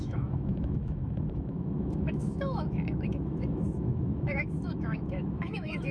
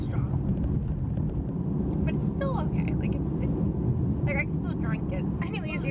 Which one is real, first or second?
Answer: second